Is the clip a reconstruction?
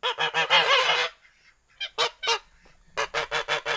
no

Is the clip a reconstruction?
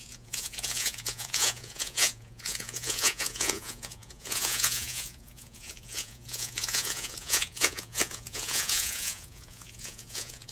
yes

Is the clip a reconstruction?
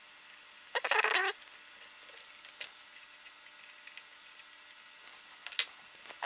no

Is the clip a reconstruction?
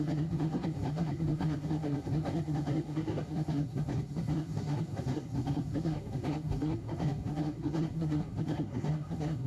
yes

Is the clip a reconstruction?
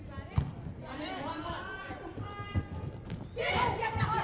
no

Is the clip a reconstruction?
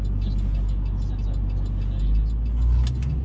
no